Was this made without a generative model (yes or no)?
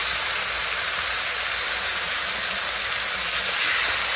yes